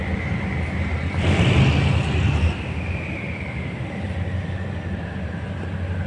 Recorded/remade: recorded